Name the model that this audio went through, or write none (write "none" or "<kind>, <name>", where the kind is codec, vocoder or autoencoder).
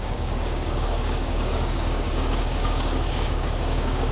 codec, DAC